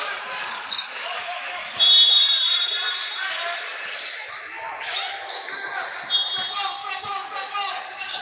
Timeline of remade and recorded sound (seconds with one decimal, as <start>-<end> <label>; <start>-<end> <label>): 0.0-0.4 recorded; 0.4-1.8 remade; 1.8-6.8 recorded; 6.8-8.2 remade